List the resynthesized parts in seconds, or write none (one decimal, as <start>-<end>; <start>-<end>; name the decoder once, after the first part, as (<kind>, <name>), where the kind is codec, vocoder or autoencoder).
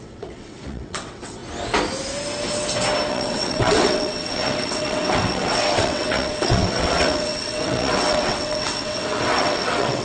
0.0-1.4 (vocoder, WaveNeXt); 3.1-10.0